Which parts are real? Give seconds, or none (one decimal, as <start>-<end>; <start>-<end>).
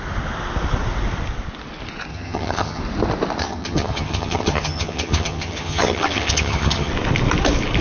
0.0-2.1; 2.8-3.4; 6.9-7.8